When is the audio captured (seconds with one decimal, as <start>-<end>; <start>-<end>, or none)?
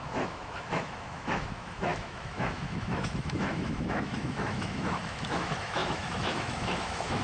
none